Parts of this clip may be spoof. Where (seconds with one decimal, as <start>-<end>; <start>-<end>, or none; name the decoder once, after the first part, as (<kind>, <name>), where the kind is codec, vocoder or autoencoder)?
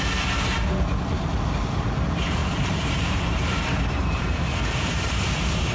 2.4-5.1 (vocoder, BigVGAN v2)